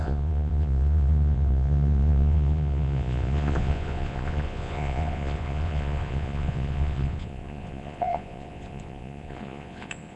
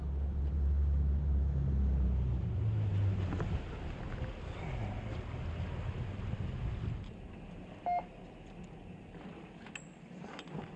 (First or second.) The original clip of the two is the second